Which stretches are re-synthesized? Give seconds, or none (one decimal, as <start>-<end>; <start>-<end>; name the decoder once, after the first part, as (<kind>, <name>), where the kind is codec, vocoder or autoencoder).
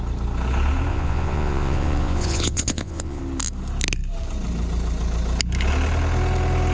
0.9-3.2 (vocoder, Vocos)